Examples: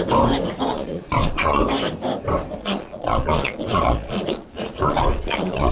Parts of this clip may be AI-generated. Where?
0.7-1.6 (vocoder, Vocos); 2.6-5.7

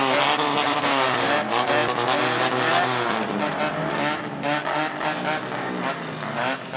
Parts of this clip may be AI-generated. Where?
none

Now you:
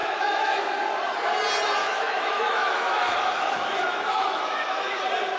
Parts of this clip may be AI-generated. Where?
0.0-0.6 (autoencoder, DAC-VAE); 1.8-5.0

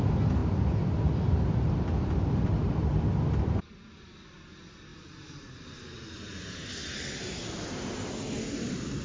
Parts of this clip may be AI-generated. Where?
none

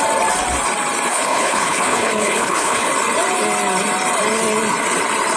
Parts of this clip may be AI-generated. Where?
1.1-2.9 (codec, HILCodec)